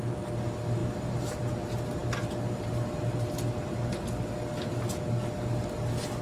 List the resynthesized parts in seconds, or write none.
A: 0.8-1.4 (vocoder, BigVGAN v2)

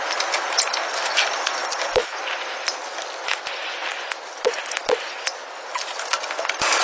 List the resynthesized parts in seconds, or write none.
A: none